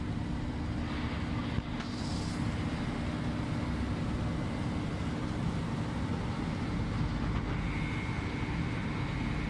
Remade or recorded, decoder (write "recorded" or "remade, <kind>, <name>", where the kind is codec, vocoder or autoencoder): recorded